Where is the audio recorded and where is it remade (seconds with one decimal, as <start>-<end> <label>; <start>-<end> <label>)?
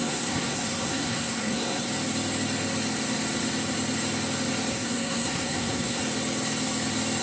0.0-1.9 remade; 1.9-4.7 recorded; 4.7-6.0 remade; 6.0-7.2 recorded